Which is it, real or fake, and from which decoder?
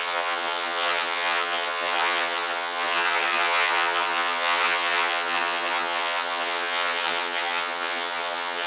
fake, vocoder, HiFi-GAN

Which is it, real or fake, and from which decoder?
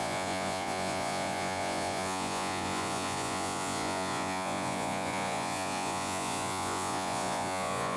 fake, vocoder, Vocos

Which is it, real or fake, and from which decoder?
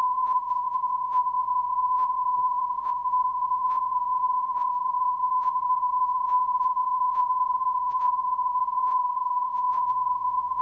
fake, vocoder, Vocos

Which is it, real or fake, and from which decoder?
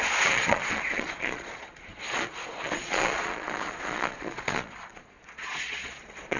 fake, vocoder, Vocos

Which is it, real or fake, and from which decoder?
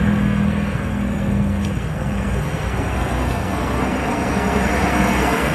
fake, codec, SNAC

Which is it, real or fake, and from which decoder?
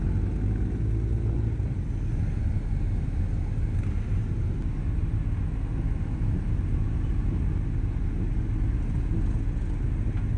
real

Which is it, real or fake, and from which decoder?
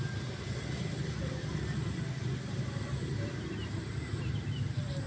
real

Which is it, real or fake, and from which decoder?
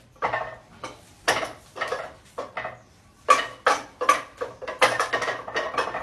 real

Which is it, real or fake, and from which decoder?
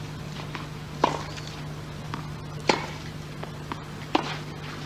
real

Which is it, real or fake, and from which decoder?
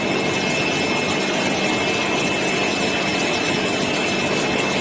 real